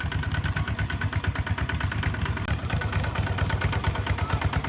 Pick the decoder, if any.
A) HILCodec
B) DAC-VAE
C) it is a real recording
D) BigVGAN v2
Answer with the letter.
C